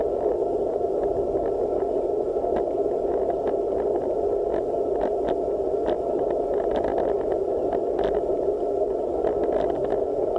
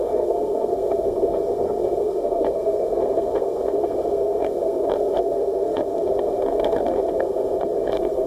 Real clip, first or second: first